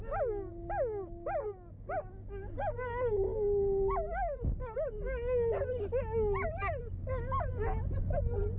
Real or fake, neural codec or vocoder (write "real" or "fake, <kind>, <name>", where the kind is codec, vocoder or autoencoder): real